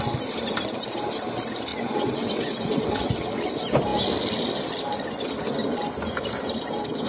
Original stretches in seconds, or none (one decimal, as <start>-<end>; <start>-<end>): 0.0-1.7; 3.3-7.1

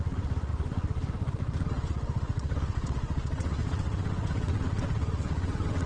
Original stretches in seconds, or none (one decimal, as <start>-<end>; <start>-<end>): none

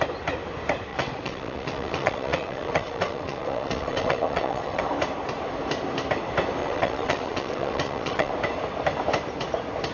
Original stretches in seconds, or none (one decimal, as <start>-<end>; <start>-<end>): 0.0-0.9; 4.8-6.6; 8.3-9.9

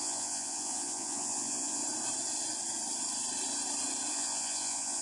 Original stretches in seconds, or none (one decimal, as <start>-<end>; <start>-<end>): 1.8-4.1

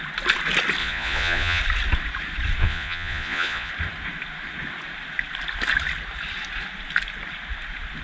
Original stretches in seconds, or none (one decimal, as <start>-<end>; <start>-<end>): 0.0-0.8; 1.6-2.6; 3.7-8.0

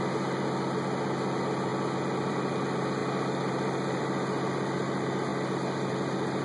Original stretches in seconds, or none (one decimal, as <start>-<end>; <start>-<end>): 0.0-3.0; 4.0-6.4